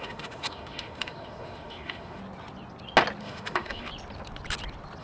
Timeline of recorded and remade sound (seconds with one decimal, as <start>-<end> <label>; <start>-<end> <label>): 0.0-2.2 remade; 2.2-3.2 recorded; 3.2-3.9 remade; 3.9-5.0 recorded